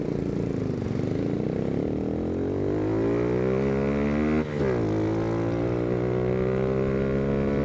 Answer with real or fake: real